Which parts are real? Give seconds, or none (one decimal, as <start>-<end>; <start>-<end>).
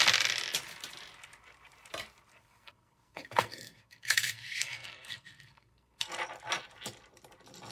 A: 0.0-2.3; 6.1-7.7